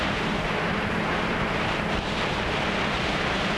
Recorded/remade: remade